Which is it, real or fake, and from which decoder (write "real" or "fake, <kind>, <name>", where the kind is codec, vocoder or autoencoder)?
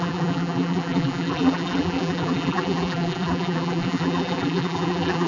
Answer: fake, vocoder, BigVGAN v2